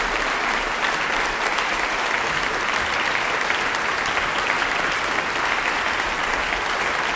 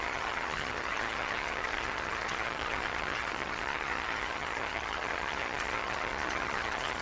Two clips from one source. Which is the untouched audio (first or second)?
first